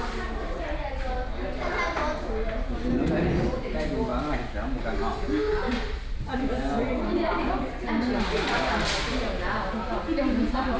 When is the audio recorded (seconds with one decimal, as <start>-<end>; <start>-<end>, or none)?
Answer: 0.0-10.8